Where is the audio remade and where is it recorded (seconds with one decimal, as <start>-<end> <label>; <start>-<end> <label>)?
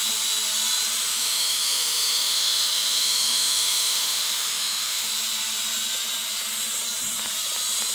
0.0-1.1 recorded; 1.1-5.1 remade; 5.1-7.9 recorded